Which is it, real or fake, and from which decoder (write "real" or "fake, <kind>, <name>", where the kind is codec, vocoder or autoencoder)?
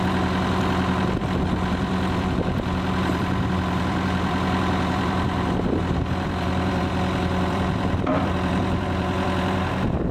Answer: fake, vocoder, BigVGAN v2